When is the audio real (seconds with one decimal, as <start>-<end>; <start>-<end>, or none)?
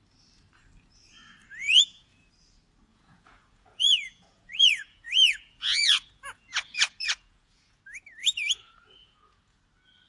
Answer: 0.0-1.6; 2.3-2.9; 7.8-8.2; 9.6-10.1